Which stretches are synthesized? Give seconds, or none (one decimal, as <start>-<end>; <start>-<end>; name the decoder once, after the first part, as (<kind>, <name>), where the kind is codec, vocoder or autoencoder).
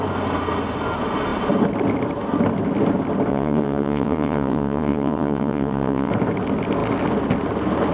3.3-6.1 (vocoder, WaveNeXt)